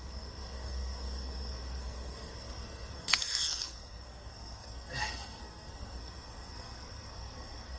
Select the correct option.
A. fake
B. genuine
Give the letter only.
A